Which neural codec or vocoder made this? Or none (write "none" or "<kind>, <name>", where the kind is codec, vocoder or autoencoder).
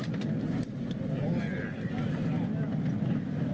none